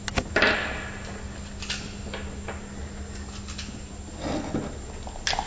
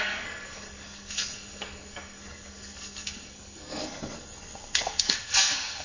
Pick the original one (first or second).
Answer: first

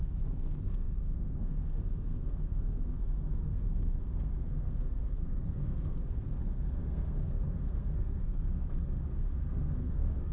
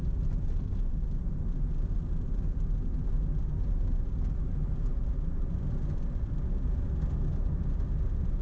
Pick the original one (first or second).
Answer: second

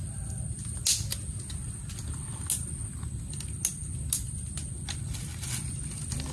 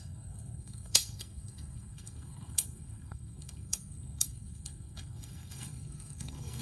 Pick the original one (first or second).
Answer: first